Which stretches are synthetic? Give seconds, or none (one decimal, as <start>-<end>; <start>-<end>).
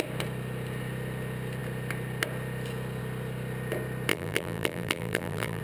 4.1-5.6